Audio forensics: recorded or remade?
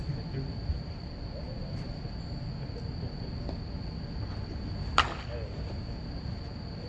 recorded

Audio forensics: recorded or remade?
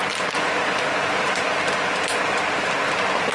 recorded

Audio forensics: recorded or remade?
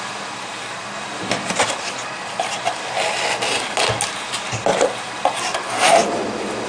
recorded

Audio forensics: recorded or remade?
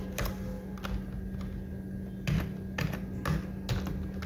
recorded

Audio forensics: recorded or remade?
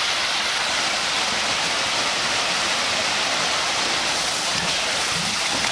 recorded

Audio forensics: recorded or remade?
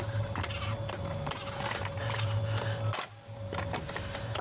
recorded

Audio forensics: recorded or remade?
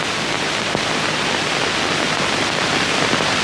recorded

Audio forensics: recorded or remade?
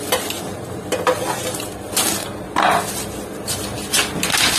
recorded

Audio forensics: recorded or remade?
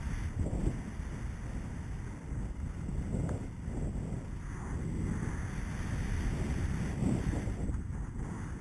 recorded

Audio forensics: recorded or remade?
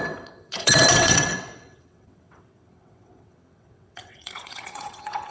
remade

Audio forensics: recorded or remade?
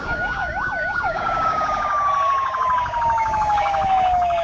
remade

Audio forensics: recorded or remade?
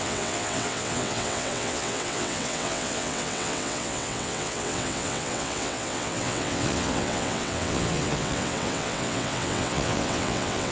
remade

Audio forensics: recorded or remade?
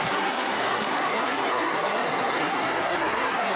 remade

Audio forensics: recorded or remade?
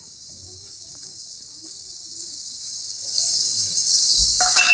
remade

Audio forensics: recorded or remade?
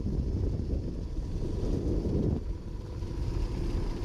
recorded